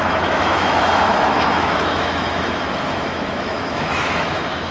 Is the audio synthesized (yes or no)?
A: yes